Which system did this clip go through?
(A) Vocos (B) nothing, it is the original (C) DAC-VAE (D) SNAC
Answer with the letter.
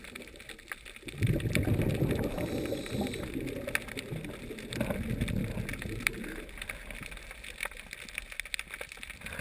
B